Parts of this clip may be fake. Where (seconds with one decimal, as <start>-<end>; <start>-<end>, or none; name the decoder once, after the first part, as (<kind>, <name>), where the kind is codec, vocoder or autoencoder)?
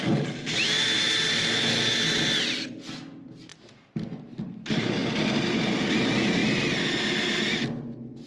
none